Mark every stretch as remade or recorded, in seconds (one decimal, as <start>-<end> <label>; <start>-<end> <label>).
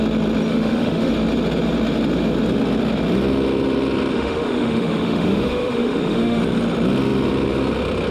0.0-0.5 recorded; 0.5-1.1 remade; 1.1-4.1 recorded; 4.1-6.4 remade; 6.4-8.1 recorded